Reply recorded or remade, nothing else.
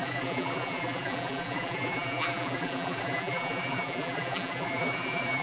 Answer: remade